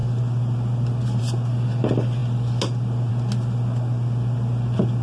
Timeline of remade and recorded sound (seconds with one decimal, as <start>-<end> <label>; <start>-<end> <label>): 0.0-5.0 recorded